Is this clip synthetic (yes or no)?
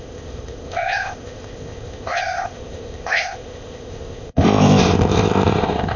yes